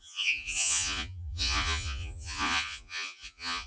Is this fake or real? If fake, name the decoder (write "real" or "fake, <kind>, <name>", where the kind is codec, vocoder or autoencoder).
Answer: fake, vocoder, Vocos